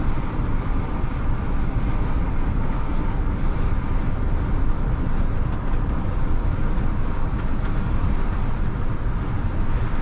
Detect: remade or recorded recorded